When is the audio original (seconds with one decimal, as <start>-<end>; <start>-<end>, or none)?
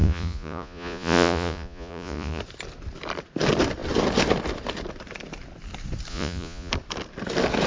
2.4-6.1; 6.7-7.7